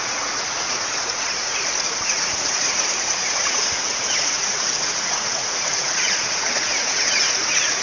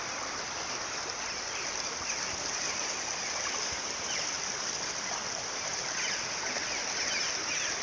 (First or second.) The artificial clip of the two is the first